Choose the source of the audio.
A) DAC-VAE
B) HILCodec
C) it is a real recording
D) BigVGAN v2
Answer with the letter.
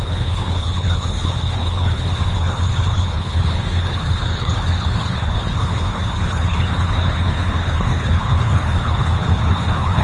B